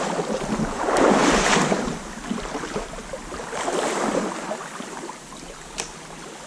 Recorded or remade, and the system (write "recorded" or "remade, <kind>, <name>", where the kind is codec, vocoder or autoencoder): recorded